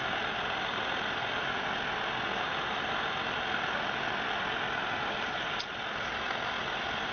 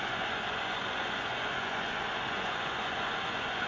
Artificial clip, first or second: second